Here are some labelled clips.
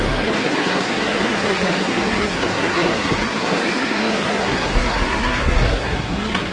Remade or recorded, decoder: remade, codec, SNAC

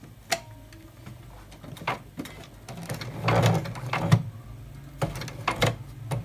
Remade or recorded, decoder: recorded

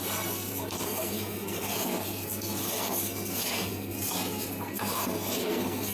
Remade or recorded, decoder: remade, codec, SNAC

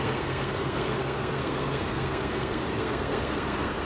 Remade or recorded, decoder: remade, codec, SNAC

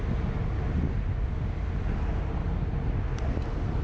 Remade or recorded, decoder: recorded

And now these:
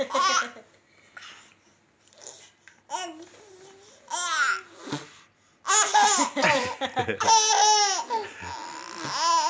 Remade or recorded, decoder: recorded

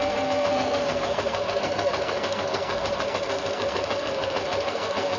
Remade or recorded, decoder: remade, codec, SNAC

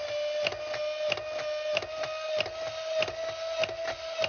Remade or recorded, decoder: recorded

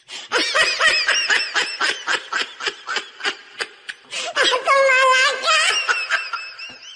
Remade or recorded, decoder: recorded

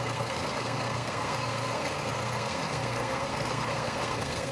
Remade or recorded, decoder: remade, codec, SNAC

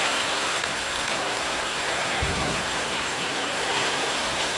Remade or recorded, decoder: remade, codec, SNAC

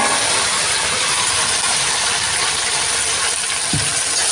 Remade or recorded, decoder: recorded